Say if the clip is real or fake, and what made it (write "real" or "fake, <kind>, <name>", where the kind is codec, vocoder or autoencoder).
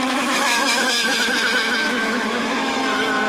fake, autoencoder, DAC-VAE